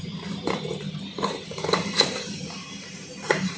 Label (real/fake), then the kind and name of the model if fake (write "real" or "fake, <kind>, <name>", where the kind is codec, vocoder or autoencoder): fake, vocoder, BigVGAN v2